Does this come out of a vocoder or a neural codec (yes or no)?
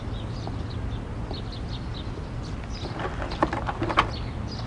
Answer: no